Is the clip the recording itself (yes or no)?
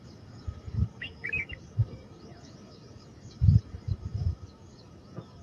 no